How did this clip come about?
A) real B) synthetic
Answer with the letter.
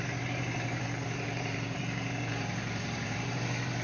B